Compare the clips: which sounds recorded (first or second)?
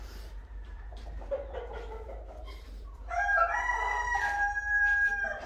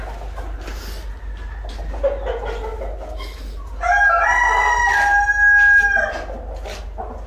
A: second